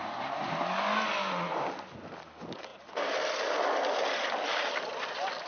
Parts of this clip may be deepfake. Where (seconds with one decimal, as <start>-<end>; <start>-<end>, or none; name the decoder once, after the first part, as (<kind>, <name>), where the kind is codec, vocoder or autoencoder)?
none